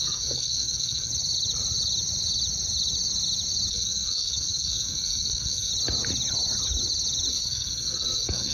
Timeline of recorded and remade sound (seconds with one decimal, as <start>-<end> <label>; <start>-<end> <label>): 0.0-1.1 remade; 1.1-3.7 recorded; 3.7-5.7 remade; 5.7-7.3 recorded; 7.3-8.5 remade